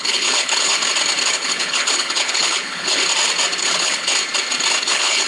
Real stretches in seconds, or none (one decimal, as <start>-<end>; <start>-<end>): 0.7-1.3; 3.0-3.6; 4.1-4.8